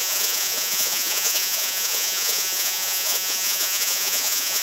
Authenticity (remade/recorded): remade